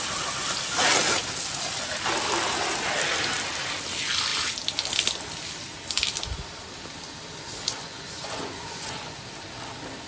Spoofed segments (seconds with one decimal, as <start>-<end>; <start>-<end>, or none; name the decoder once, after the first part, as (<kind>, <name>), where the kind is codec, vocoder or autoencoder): 7.8-9.1 (vocoder, Vocos)